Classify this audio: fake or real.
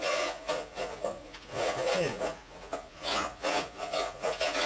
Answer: fake